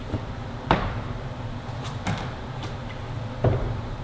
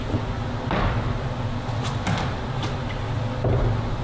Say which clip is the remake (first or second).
first